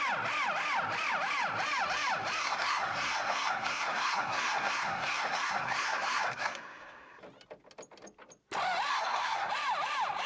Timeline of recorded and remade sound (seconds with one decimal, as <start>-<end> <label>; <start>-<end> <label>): 0.0-2.4 recorded; 2.4-7.2 remade; 7.2-8.9 recorded; 8.9-9.5 remade; 9.5-10.3 recorded